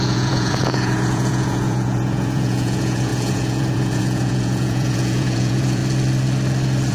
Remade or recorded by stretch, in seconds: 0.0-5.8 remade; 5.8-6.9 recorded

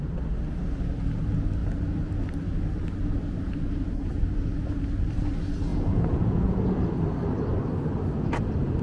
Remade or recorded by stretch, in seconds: 0.0-5.7 recorded; 5.7-6.9 remade; 6.9-8.8 recorded